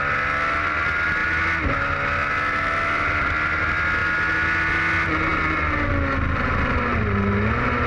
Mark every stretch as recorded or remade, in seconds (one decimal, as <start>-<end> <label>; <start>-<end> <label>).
0.0-7.9 recorded